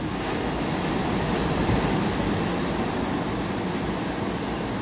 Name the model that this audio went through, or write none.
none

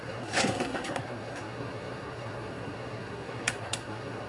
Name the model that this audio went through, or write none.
codec, SNAC